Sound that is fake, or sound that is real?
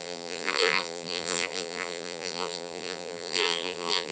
fake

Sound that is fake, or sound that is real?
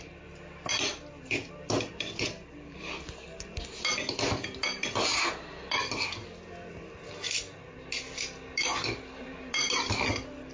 real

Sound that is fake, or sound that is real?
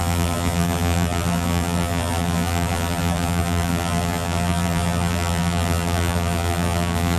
fake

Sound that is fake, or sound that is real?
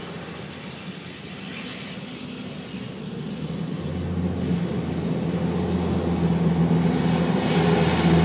real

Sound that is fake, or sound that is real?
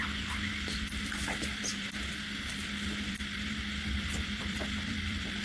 fake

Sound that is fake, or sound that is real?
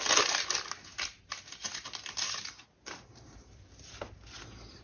real